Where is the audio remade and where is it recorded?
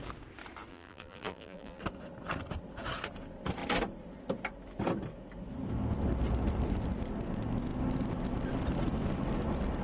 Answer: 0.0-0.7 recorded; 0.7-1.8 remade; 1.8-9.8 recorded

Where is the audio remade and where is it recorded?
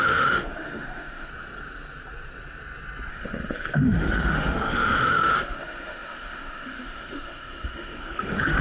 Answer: 0.0-1.3 remade; 1.3-3.1 recorded; 3.1-8.6 remade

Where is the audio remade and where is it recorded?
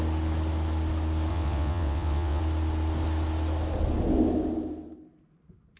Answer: 0.0-1.3 recorded; 1.3-2.4 remade; 2.4-5.8 recorded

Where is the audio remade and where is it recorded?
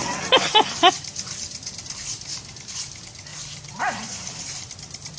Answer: 0.0-3.3 recorded; 3.3-4.7 remade; 4.7-5.2 recorded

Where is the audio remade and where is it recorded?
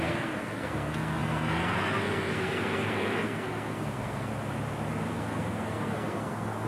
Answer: 0.0-4.3 remade; 4.3-5.1 recorded; 5.1-6.7 remade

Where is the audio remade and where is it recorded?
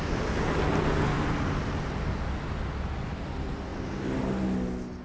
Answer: 0.0-5.0 recorded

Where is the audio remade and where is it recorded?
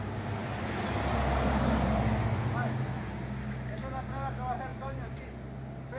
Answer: 0.0-4.7 recorded; 4.7-5.2 remade; 5.2-6.0 recorded